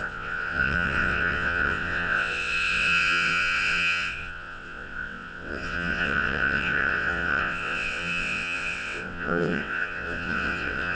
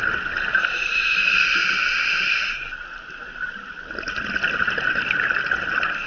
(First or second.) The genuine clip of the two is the second